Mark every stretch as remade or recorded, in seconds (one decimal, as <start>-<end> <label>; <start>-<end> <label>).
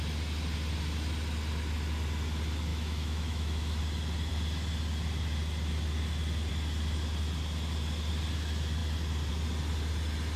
0.0-2.7 recorded; 2.7-3.8 remade; 3.8-10.4 recorded